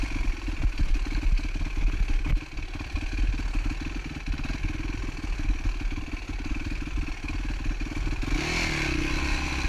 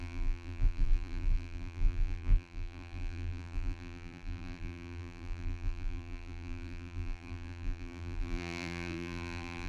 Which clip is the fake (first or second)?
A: second